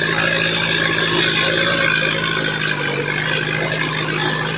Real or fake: real